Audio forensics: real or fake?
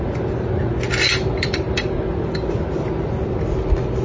real